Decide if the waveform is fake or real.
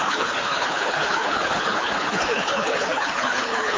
fake